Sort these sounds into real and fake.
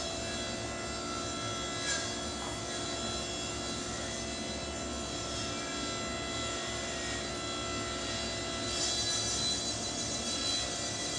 real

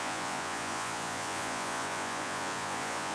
fake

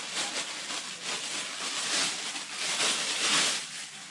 real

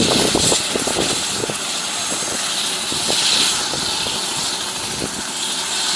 real